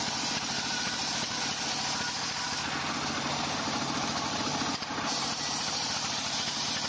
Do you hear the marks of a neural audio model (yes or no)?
no